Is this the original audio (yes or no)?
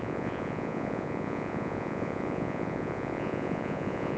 no